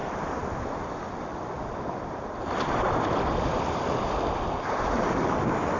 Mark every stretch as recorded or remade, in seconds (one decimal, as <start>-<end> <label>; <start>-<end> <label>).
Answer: 0.0-3.5 remade; 3.5-5.8 recorded